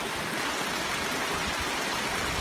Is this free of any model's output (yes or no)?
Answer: yes